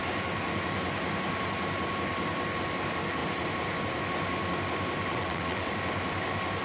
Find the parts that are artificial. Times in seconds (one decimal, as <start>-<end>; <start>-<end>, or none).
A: 5.1-5.7

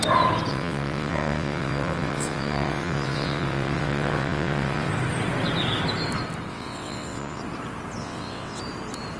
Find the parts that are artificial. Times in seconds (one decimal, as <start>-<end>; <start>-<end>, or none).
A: 0.5-4.9; 6.5-7.4; 8.0-8.6

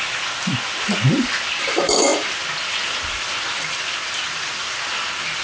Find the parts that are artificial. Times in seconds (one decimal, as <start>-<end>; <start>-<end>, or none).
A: none

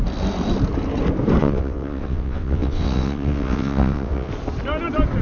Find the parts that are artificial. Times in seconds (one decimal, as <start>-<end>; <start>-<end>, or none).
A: 1.4-4.3

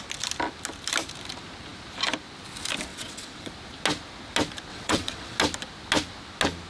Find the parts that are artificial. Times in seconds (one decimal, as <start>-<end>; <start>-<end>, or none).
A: 2.9-3.5; 4.7-5.4

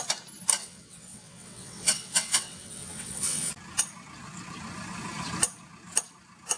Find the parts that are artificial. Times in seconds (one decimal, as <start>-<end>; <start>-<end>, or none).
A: 0.6-3.5